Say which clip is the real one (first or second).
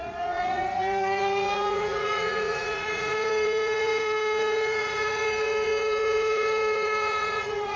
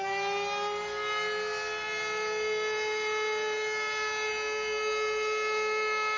second